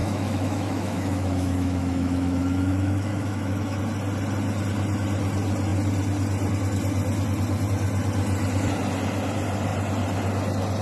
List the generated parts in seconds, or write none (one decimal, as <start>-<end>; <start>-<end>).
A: 0.0-3.8